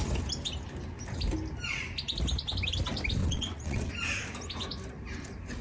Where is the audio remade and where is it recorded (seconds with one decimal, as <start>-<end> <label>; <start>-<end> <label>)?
0.0-3.2 recorded; 3.2-3.9 remade; 3.9-5.6 recorded